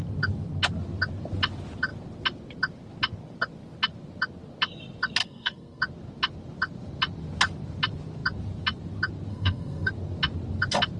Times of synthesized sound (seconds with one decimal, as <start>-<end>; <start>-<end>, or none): 5.2-5.8; 9.3-9.9

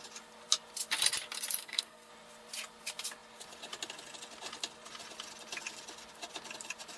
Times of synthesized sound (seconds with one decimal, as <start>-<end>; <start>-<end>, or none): 1.6-2.1